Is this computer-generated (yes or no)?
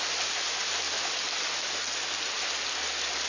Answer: no